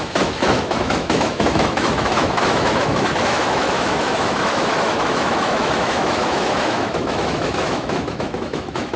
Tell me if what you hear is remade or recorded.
remade